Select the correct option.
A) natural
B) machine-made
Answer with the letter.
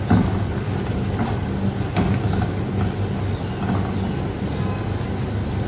A